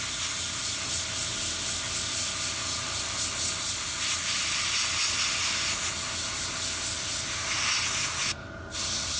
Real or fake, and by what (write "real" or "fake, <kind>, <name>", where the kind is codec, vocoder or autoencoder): real